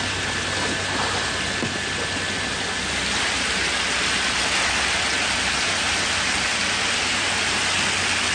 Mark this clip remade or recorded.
recorded